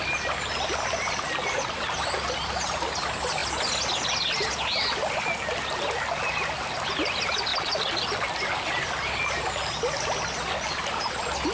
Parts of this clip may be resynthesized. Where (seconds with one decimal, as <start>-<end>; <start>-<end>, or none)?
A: none